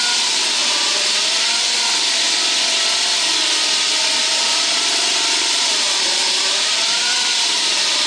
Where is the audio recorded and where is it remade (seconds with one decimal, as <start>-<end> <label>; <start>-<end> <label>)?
0.0-0.6 recorded; 0.6-1.2 remade; 1.2-4.2 recorded; 4.2-8.1 remade

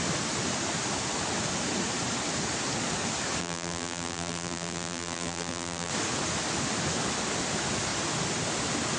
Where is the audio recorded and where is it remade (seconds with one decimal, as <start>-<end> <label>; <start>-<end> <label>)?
0.0-3.4 recorded; 3.4-5.9 remade; 5.9-9.0 recorded

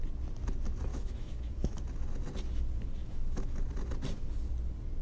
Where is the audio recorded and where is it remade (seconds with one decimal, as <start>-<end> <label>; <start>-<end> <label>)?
0.0-0.9 recorded; 0.9-1.8 remade; 1.8-3.0 recorded; 3.0-3.6 remade; 3.6-5.0 recorded

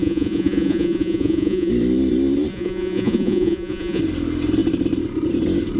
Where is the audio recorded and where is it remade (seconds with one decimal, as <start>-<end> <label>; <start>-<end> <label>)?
0.0-1.7 remade; 1.7-2.5 recorded; 2.5-4.0 remade; 4.0-5.8 recorded

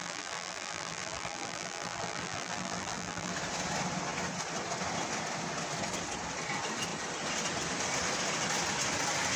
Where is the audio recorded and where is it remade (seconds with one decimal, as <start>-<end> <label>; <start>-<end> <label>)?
0.0-3.3 remade; 3.3-9.4 recorded

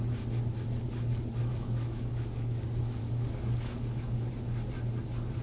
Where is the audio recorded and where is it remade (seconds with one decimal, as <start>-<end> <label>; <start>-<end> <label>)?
0.0-1.5 recorded; 1.5-2.6 remade; 2.6-3.0 recorded; 3.0-4.3 remade; 4.3-5.4 recorded